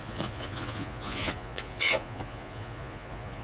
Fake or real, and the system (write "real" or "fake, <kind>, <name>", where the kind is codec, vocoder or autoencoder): fake, vocoder, Vocos